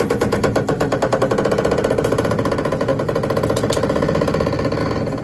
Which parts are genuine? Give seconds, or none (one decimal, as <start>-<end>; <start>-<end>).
0.0-5.2